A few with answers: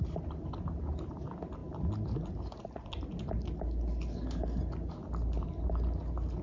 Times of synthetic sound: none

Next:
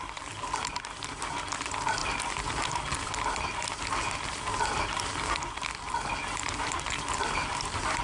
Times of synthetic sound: none

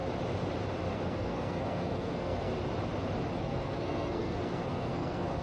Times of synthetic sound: 0.9-2.5; 3.4-5.4

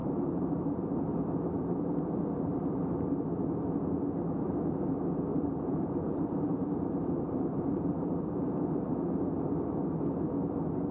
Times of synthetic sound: 0.0-0.6; 5.3-8.5

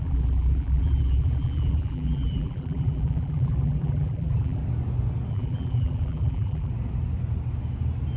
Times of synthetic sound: 0.0-4.6; 5.3-6.7

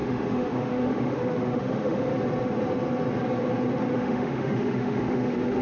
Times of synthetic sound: 0.0-2.1; 3.9-5.6

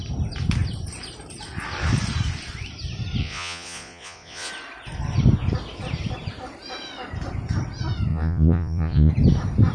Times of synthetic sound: 3.2-4.5; 8.1-9.1

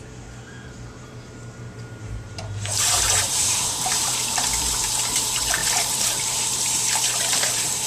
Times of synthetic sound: 0.0-7.9